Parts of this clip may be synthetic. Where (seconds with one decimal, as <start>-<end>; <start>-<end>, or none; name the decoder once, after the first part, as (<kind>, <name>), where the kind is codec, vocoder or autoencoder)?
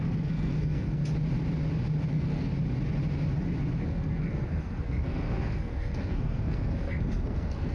0.0-1.0 (codec, SNAC); 2.1-2.5; 3.8-7.7